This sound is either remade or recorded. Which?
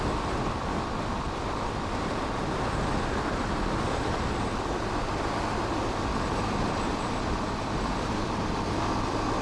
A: remade